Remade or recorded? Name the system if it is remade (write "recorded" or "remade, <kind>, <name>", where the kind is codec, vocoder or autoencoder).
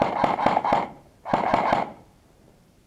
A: remade, vocoder, BigVGAN v2